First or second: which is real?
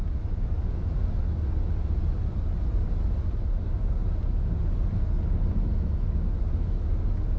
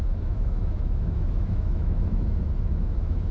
first